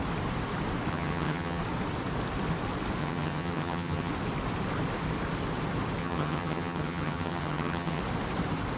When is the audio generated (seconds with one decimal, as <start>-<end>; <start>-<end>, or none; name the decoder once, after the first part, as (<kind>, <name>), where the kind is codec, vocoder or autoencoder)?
0.9-1.6 (vocoder, HiFi-GAN); 3.0-4.1; 6.0-8.0